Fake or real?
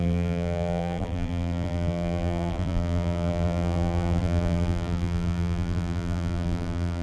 fake